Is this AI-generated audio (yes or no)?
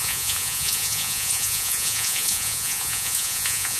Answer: yes